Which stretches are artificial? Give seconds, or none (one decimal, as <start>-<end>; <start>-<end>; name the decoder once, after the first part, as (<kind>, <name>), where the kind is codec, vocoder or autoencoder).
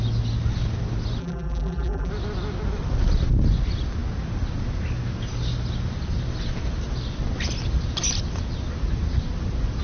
1.2-2.1 (vocoder, BigVGAN v2)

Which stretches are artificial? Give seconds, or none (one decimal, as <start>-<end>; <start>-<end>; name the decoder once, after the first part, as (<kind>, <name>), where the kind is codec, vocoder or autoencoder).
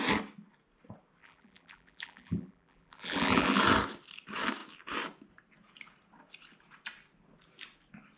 1.2-3.6 (vocoder, BigVGAN v2)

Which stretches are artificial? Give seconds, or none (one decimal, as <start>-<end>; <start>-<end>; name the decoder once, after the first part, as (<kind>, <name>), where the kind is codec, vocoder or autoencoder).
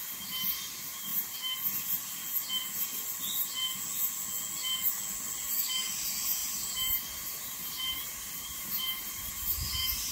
6.4-9.3 (vocoder, BigVGAN v2)